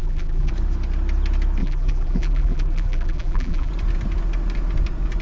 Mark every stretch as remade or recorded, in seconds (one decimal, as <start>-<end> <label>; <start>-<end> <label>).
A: 0.0-0.5 remade; 0.5-1.6 recorded; 1.6-3.7 remade; 3.7-5.2 recorded